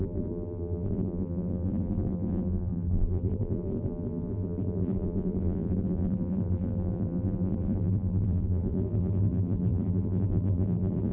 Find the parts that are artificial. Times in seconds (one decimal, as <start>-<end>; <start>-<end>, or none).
0.0-11.1